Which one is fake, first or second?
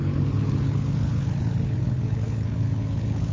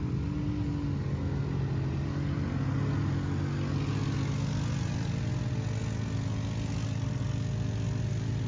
first